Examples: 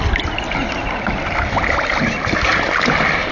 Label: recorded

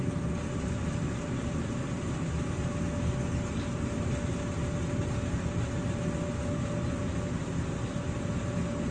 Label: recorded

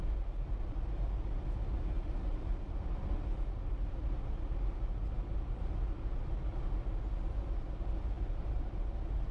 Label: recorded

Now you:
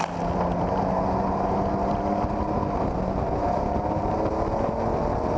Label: recorded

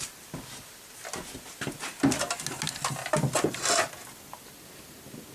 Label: recorded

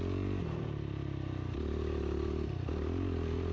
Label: recorded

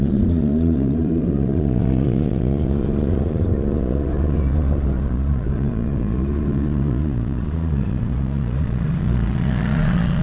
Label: remade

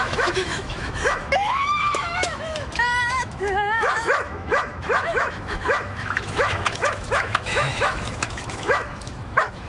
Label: remade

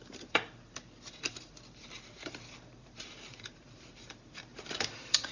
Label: remade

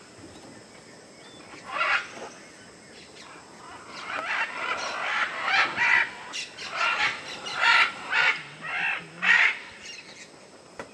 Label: recorded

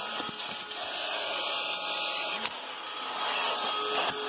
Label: recorded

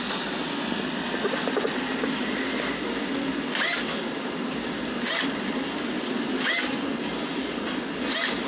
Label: recorded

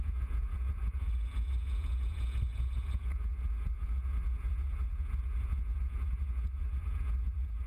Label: remade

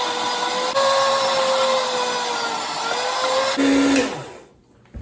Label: recorded